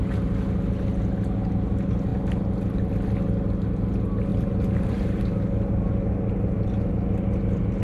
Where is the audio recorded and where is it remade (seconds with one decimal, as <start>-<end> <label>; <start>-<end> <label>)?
0.0-4.3 recorded; 4.3-5.2 remade; 5.2-7.8 recorded